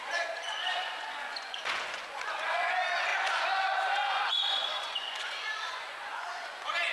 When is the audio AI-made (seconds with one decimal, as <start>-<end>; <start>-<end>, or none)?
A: 0.0-6.9